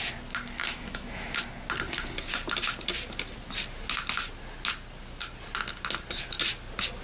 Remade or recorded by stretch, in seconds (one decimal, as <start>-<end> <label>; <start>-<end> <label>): 0.0-0.6 recorded; 0.6-1.4 remade; 1.4-7.0 recorded